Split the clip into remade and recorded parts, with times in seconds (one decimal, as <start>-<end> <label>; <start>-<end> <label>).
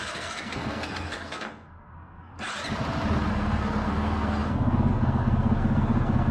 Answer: 0.0-2.3 remade; 2.3-3.3 recorded; 3.3-6.3 remade